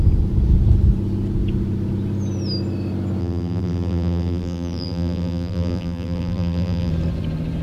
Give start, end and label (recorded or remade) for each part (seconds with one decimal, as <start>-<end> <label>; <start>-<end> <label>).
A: 0.0-3.2 recorded; 3.2-6.9 remade; 6.9-7.6 recorded